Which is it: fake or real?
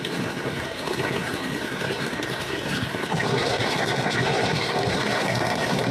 fake